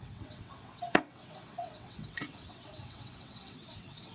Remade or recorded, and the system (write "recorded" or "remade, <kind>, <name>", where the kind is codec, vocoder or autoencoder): remade, vocoder, WaveNeXt